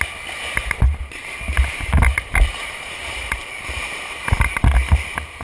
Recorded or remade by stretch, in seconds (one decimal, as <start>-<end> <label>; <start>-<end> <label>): 0.0-0.6 recorded; 0.6-3.8 remade; 3.8-5.4 recorded

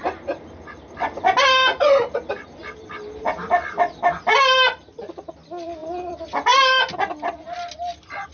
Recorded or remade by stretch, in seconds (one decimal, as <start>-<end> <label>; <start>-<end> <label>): 0.0-2.6 recorded; 2.6-4.0 remade; 4.0-8.3 recorded

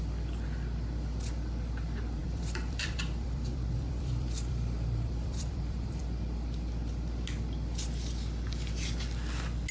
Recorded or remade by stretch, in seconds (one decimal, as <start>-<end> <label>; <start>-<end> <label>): 0.0-2.2 recorded; 2.2-6.0 remade; 6.0-9.7 recorded

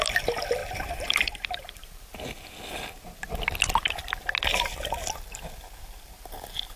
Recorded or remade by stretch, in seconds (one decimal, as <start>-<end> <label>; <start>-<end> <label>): 0.0-0.6 remade; 0.6-1.1 recorded; 1.1-2.1 remade; 2.1-5.8 recorded; 5.8-6.8 remade

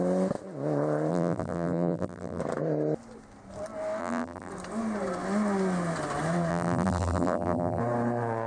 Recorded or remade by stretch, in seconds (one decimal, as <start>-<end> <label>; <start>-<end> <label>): 0.0-1.1 recorded; 1.1-2.4 remade; 2.4-4.0 recorded; 4.0-4.5 remade; 4.5-6.5 recorded; 6.5-7.8 remade; 7.8-8.5 recorded